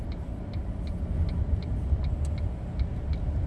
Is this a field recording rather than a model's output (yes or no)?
yes